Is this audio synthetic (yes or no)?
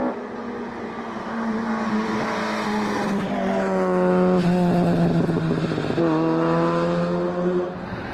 no